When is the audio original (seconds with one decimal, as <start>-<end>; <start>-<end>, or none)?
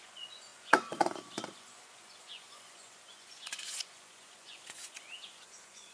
none